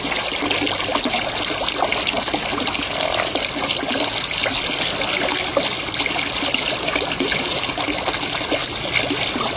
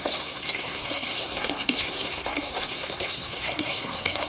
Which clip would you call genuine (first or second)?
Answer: first